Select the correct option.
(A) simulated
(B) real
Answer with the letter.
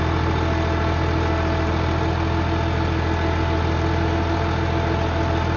B